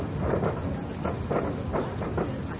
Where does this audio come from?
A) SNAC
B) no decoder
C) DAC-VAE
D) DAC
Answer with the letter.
B